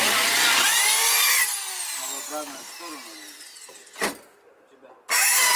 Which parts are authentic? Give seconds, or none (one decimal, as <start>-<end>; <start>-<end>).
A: 0.0-5.6